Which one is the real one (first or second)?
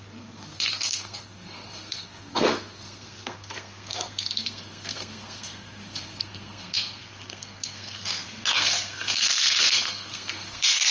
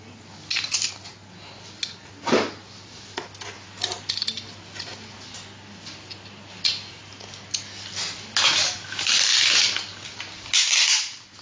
second